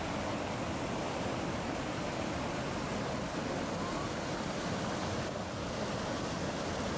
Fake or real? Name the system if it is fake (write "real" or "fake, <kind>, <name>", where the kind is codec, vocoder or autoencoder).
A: real